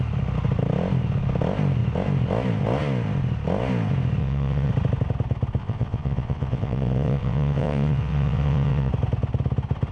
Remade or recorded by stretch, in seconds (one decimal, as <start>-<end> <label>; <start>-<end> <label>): 0.0-4.2 recorded; 4.2-4.7 remade; 4.7-5.6 recorded; 5.6-8.9 remade; 8.9-9.9 recorded